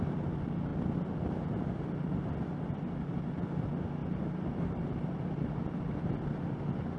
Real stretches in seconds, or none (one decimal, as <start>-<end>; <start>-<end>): 0.0-4.0; 6.1-7.0

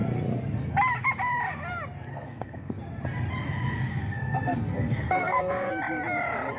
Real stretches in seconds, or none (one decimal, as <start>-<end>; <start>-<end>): 0.0-2.1; 2.8-3.9; 5.8-6.6

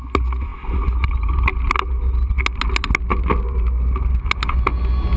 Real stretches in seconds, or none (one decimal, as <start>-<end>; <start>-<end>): 0.0-5.2

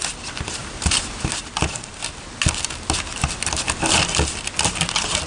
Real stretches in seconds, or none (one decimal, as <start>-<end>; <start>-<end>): 0.0-0.6; 1.5-5.3

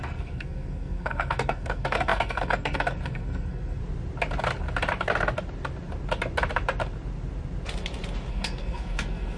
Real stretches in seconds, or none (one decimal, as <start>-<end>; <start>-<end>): 3.8-8.3